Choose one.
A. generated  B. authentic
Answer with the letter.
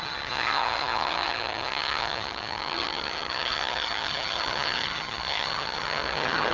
A